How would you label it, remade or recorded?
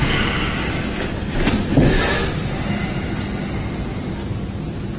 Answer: recorded